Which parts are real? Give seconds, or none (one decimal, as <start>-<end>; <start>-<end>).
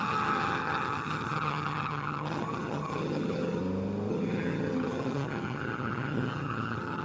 3.6-4.1